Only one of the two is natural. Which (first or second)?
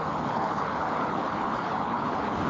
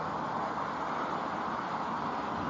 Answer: second